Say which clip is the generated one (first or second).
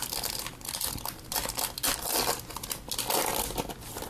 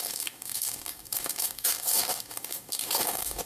second